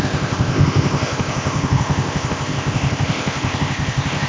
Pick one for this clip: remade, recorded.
remade